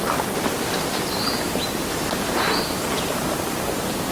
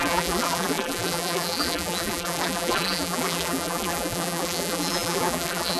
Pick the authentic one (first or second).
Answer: first